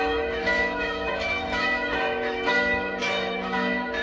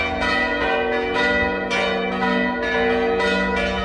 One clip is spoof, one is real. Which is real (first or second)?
second